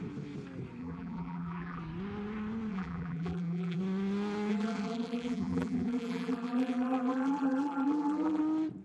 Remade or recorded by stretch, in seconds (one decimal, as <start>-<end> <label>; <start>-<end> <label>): 0.0-0.8 recorded; 0.8-1.8 remade; 1.8-2.7 recorded; 2.7-3.8 remade; 3.8-4.5 recorded; 4.5-8.4 remade; 8.4-8.8 recorded